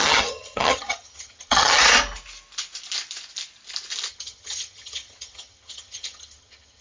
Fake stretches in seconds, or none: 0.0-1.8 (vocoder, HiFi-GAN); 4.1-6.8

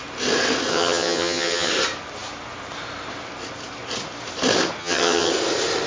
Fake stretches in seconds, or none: 0.7-1.7 (vocoder, HiFi-GAN); 4.8-5.3

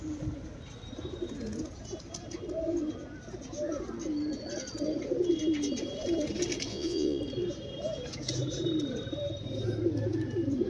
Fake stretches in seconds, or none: 6.7-7.2 (vocoder, Vocos)

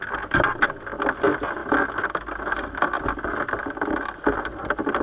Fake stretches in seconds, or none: none

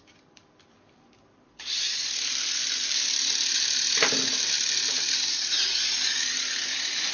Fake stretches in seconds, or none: 0.0-7.1 (vocoder, BigVGAN v2)